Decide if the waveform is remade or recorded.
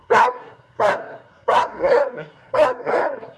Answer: remade